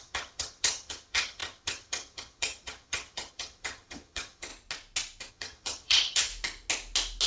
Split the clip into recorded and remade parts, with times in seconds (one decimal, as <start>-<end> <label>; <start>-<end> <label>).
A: 0.0-4.5 remade; 4.5-5.3 recorded; 5.3-6.3 remade; 6.3-7.3 recorded